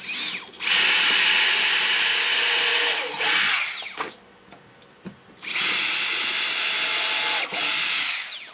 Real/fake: real